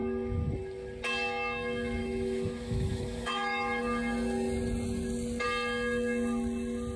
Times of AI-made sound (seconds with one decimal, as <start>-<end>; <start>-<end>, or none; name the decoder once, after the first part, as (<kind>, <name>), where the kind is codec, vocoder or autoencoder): 2.0-3.8 (autoencoder, DAC-VAE)